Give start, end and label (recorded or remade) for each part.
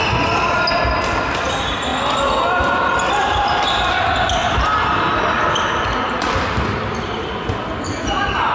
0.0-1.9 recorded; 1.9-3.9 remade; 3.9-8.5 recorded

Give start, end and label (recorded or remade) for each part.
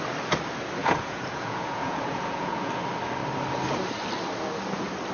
0.0-0.8 recorded; 0.8-2.7 remade; 2.7-5.1 recorded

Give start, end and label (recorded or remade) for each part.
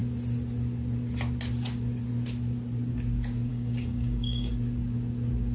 0.0-3.5 recorded; 3.5-4.5 remade; 4.5-5.5 recorded